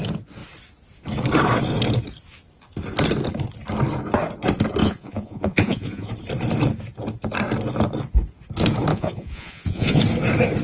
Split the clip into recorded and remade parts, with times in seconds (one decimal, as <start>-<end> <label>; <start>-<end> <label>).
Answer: 0.0-4.8 recorded; 4.8-6.1 remade; 6.1-8.9 recorded; 8.9-10.0 remade; 10.0-10.6 recorded

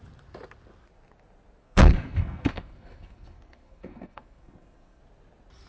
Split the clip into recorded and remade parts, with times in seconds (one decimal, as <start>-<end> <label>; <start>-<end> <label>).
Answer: 0.0-1.6 recorded; 1.6-5.0 remade; 5.0-5.7 recorded

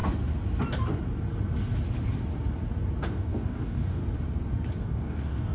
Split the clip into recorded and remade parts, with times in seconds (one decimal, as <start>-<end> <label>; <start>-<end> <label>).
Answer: 0.0-3.1 recorded; 3.1-4.0 remade; 4.0-4.8 recorded; 4.8-5.5 remade

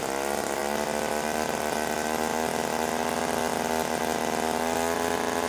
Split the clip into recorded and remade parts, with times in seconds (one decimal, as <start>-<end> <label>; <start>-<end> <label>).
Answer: 0.0-5.5 recorded

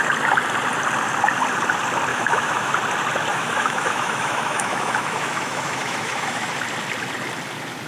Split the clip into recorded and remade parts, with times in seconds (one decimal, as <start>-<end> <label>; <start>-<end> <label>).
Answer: 0.0-2.1 recorded; 2.1-2.7 remade; 2.7-3.3 recorded; 3.3-6.5 remade; 6.5-7.9 recorded

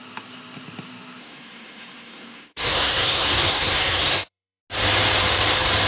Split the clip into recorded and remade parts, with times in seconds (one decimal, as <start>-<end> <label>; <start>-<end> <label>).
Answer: 0.0-1.2 recorded; 1.2-4.6 remade; 4.6-5.9 recorded